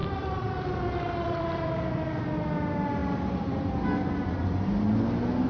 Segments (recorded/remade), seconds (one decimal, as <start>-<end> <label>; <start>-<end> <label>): 0.0-2.2 remade; 2.2-3.0 recorded; 3.0-3.7 remade; 3.7-5.5 recorded